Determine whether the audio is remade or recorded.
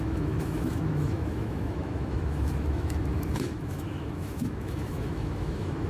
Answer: remade